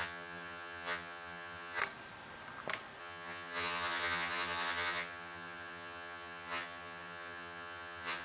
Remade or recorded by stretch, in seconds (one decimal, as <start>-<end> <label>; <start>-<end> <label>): 0.0-1.8 remade; 1.8-3.0 recorded; 3.0-8.2 remade